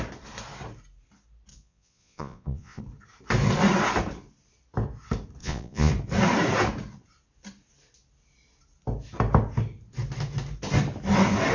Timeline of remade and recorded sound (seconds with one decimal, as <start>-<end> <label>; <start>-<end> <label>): 0.0-1.5 recorded; 1.5-2.8 remade; 2.8-5.4 recorded; 5.4-5.9 remade; 5.9-11.5 recorded